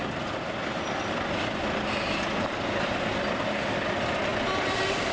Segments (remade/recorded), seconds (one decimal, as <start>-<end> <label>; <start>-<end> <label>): 0.0-5.1 recorded